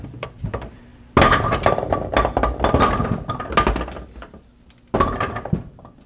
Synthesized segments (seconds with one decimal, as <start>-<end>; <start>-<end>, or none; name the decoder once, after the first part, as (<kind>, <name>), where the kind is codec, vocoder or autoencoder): none